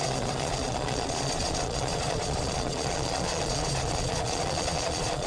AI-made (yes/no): yes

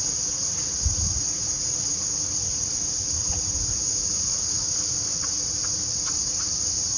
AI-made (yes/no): yes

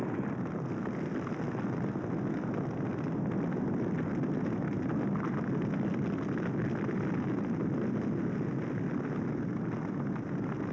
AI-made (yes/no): no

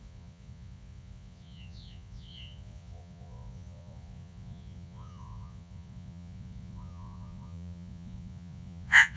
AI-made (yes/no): yes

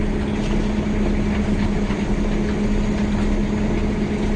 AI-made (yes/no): no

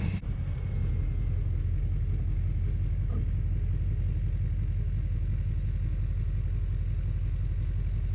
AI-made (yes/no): no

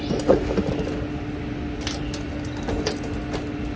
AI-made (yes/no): no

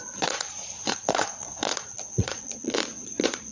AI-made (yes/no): yes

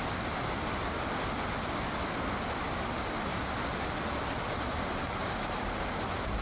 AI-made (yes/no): no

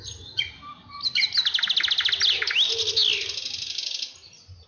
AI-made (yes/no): no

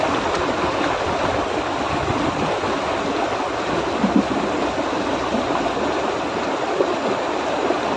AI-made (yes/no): no